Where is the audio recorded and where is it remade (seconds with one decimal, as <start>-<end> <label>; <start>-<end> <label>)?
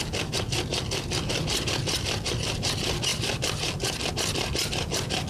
0.0-0.7 recorded; 0.7-2.5 remade; 2.5-3.1 recorded; 3.1-4.1 remade; 4.1-5.3 recorded